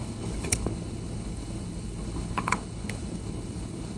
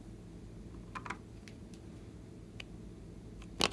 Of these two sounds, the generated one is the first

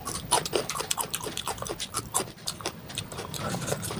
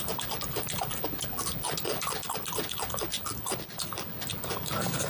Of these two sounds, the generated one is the first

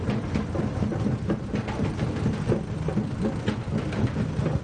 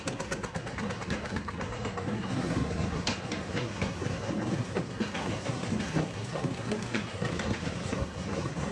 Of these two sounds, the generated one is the second